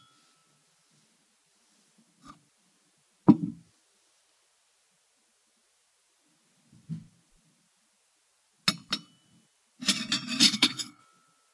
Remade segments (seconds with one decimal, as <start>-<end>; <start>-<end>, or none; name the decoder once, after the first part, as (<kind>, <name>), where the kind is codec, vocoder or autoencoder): 10.4-11.0 (codec, HILCodec)